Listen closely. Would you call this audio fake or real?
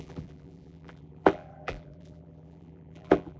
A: fake